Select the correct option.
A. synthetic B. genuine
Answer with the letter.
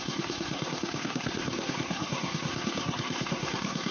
A